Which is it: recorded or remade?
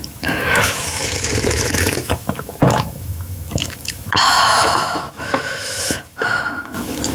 remade